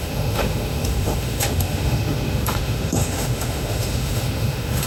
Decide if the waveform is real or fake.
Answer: fake